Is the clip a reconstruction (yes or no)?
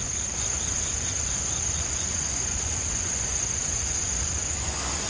yes